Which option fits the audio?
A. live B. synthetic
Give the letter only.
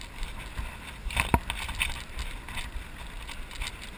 A